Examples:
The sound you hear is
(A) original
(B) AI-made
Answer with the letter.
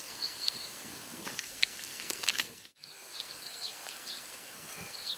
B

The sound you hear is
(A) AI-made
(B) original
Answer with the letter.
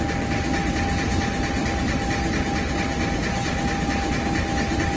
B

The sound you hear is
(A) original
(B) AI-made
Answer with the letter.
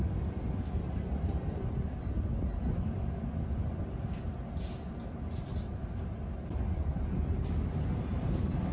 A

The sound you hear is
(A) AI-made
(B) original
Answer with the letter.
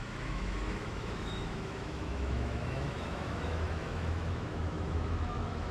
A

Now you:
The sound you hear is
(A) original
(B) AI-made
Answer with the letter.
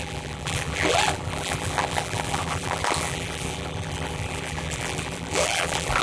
B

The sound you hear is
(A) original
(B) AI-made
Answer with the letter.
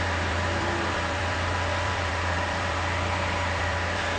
B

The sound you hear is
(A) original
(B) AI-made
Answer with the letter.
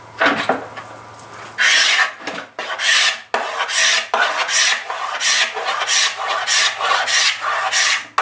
A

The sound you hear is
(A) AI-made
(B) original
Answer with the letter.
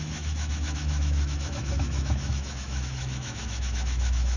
A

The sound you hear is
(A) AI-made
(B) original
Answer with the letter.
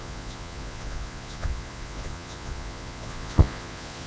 A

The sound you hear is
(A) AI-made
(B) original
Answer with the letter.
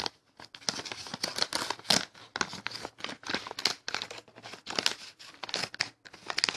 B